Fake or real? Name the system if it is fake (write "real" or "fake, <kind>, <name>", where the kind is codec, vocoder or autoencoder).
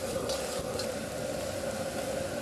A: real